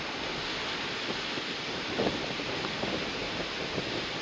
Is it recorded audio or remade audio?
recorded